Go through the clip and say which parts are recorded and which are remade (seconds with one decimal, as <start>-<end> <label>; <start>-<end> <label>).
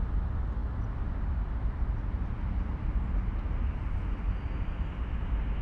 0.0-5.6 recorded